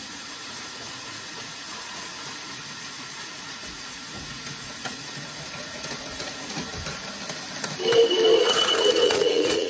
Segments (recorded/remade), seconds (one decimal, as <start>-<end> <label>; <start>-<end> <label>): 0.0-6.7 remade; 6.7-8.4 recorded; 8.4-9.7 remade